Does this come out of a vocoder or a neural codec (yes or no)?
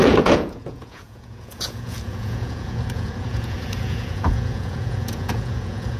yes